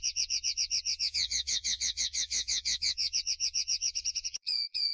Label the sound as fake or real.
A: fake